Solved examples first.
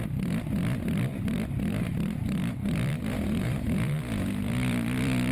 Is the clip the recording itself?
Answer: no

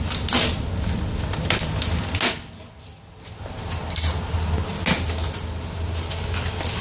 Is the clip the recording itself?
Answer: yes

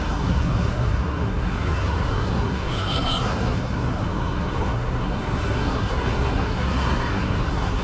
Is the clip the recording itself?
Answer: no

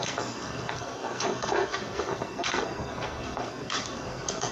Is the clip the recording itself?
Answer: no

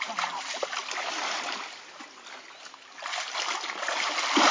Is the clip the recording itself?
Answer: yes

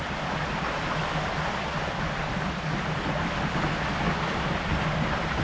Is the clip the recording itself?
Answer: yes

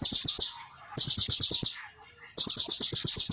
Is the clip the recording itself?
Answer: yes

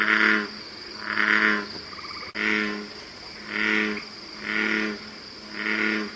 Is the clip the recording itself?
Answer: yes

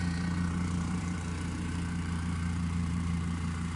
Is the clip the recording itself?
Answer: no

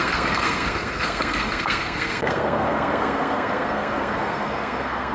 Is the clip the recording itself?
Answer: no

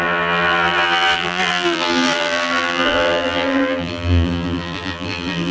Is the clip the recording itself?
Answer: no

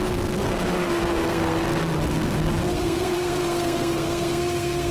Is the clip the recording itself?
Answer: no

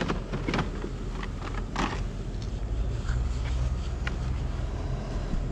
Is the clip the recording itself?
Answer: yes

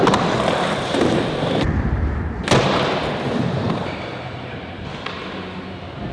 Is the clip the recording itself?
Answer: yes